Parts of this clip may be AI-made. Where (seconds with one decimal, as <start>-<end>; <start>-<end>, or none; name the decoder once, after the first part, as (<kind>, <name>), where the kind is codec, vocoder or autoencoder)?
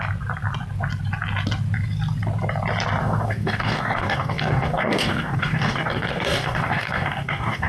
3.0-7.7 (codec, DAC)